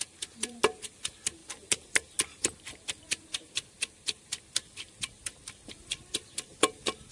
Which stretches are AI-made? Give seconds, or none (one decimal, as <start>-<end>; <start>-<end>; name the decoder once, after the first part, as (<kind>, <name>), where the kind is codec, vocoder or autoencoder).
none